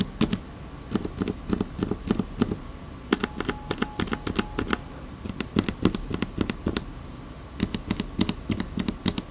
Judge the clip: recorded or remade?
recorded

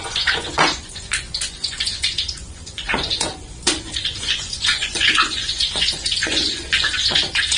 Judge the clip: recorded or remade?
remade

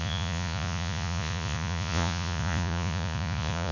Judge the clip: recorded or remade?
remade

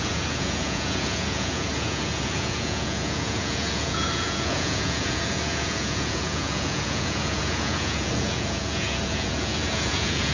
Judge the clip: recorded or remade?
remade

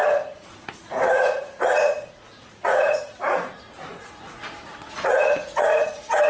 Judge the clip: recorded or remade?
remade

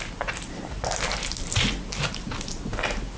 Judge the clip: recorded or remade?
recorded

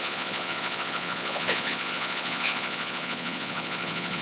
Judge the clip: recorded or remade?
remade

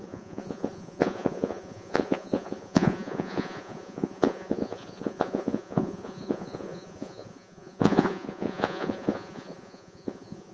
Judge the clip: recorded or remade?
remade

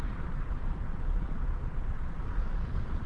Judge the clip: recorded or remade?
remade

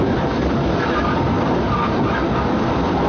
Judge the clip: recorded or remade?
recorded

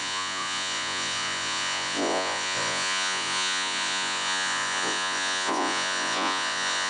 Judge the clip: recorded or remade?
remade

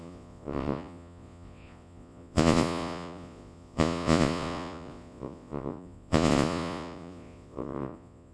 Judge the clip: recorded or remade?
remade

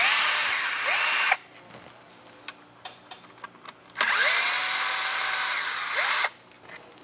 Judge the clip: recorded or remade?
recorded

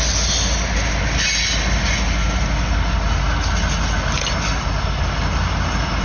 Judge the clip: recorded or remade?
recorded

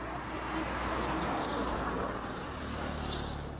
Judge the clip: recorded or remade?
recorded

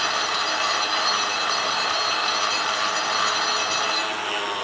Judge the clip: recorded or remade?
recorded